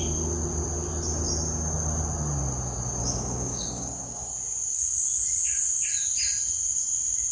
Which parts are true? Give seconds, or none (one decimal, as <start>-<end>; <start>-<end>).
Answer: 0.0-3.0; 4.3-7.3